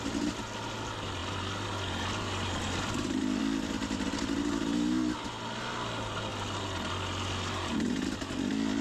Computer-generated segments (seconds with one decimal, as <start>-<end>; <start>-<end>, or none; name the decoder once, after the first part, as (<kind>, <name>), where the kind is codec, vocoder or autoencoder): none